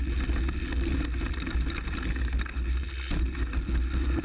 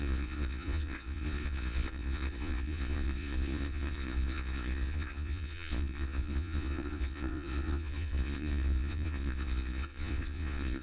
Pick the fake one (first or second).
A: second